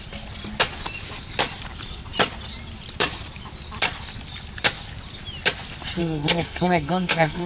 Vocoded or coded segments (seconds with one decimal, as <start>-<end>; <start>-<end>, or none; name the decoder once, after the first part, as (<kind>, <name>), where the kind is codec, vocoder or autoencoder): 6.0-7.5 (codec, SNAC)